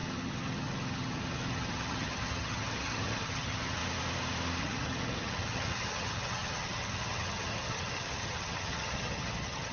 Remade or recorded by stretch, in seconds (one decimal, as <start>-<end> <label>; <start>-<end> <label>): 0.0-3.8 remade; 3.8-4.6 recorded; 4.6-9.7 remade